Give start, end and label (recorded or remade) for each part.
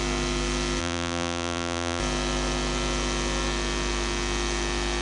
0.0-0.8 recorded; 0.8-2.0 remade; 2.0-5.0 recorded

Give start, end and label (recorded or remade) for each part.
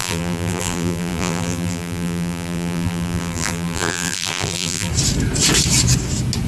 0.0-4.9 remade; 4.9-6.5 recorded